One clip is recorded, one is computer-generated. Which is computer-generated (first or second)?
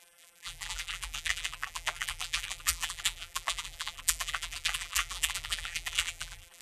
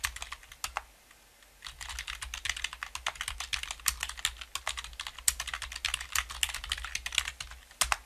first